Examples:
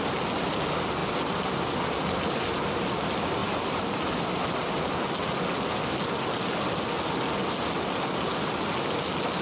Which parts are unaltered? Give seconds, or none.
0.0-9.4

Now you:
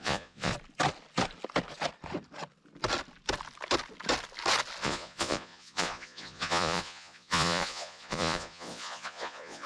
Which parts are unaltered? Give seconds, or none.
0.5-4.8

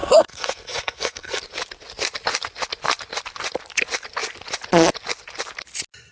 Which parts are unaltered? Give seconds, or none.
1.4-6.1

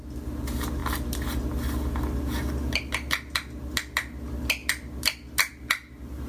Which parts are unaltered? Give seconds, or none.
0.0-6.3